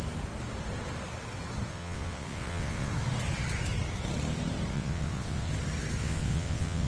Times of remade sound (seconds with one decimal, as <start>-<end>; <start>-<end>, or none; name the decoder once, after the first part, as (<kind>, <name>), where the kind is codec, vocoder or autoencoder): 1.7-2.9 (vocoder, WaveNeXt); 4.7-5.5; 6.0-6.9